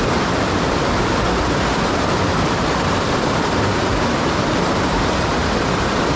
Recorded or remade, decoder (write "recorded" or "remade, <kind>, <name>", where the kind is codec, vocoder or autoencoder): remade, vocoder, BigVGAN v2